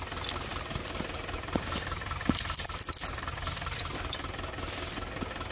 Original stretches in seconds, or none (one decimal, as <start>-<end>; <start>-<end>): 0.0-5.5